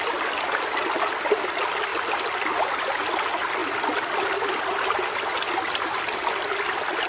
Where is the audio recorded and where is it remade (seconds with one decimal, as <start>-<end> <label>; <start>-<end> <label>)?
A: 0.0-7.1 recorded